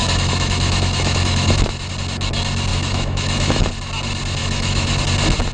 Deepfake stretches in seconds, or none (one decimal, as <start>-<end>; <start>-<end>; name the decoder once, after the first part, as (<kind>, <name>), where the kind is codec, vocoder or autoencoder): 0.0-1.9 (autoencoder, DAC-VAE); 2.7-3.7; 4.4-5.0

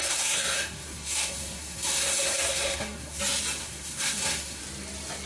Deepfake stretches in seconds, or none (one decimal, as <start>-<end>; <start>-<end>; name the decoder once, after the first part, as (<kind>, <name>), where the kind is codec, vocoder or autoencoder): 0.0-3.2 (codec, SNAC); 3.6-4.6

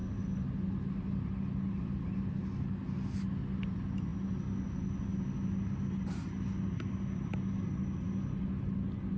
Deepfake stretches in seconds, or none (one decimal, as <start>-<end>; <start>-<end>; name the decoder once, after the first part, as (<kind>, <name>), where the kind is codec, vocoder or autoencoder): none